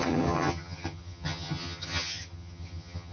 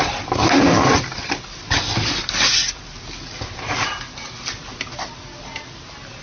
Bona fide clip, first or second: second